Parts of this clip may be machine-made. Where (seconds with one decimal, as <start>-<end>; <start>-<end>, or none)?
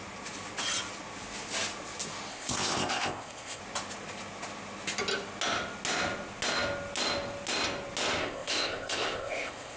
2.3-3.6; 8.2-9.8